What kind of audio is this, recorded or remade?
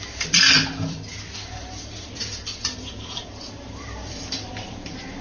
remade